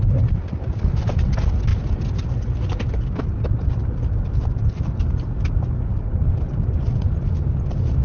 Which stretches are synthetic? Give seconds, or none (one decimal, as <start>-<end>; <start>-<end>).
none